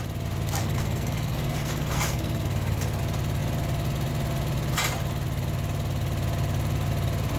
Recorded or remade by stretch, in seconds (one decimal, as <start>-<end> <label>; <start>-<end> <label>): 0.0-0.6 recorded; 0.6-3.0 remade; 3.0-7.4 recorded